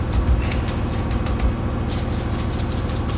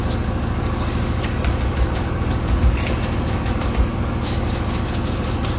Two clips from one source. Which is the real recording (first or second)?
first